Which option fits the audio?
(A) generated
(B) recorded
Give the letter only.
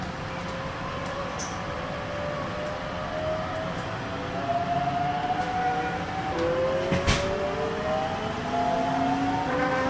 B